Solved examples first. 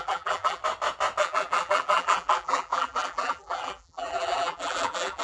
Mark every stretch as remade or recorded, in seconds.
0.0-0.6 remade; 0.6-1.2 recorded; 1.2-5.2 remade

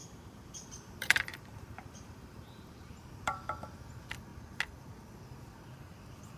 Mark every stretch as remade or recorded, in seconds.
0.0-3.8 remade; 3.8-6.4 recorded

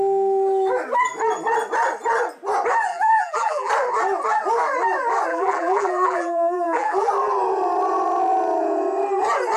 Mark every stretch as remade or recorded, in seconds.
0.0-2.9 recorded; 2.9-3.7 remade; 3.7-5.3 recorded; 5.3-7.1 remade; 7.1-9.6 recorded

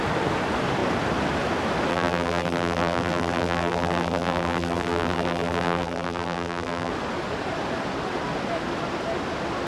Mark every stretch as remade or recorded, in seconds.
0.0-1.9 recorded; 1.9-6.9 remade; 6.9-9.7 recorded